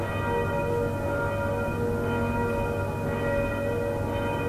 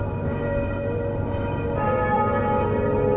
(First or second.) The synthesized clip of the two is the second